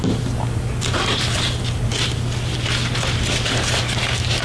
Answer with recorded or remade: recorded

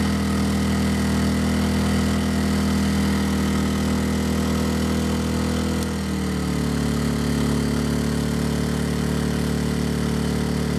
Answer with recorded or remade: recorded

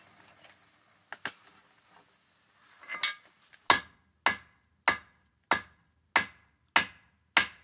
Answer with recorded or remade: recorded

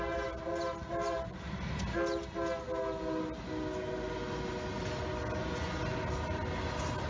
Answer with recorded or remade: recorded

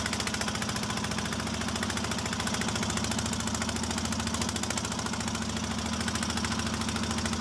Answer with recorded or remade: recorded